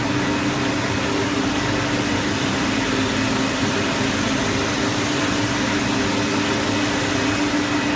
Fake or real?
real